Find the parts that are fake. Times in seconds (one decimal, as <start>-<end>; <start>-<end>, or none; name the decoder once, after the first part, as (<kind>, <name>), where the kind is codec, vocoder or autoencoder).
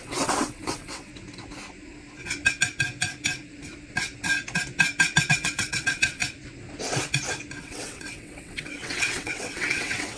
0.0-1.1 (vocoder, WaveNeXt); 5.3-6.2; 7.6-10.2